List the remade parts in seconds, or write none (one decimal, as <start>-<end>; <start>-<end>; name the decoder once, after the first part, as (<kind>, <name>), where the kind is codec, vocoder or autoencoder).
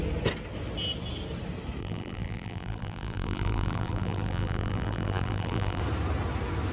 1.8-5.8 (vocoder, BigVGAN v2)